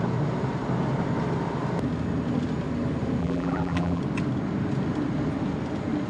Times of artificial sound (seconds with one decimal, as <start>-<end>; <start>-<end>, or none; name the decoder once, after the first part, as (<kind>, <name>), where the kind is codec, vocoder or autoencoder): 3.2-4.0 (vocoder, BigVGAN v2)